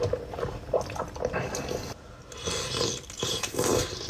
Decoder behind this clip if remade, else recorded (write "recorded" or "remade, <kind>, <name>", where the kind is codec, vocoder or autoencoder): recorded